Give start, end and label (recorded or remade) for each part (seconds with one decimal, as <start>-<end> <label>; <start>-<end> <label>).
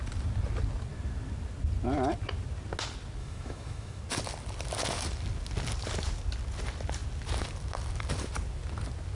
0.0-3.2 recorded; 3.2-4.0 remade; 4.0-9.1 recorded